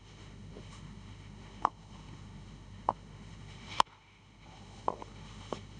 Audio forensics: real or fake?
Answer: fake